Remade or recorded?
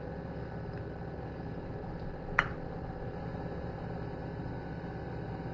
recorded